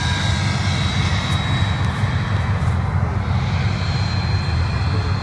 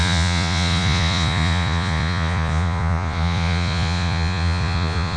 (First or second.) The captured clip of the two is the first